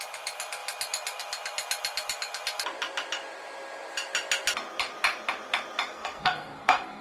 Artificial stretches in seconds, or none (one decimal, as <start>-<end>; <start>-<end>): 5.9-7.0